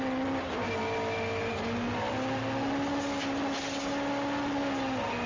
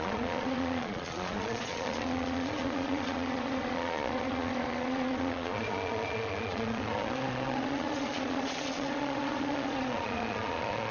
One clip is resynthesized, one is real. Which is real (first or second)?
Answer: first